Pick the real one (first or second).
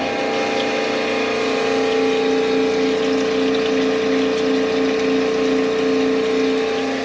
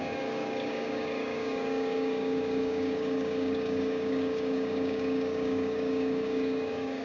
first